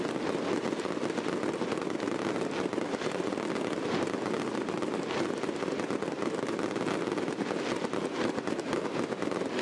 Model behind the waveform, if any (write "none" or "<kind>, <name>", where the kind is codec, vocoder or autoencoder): none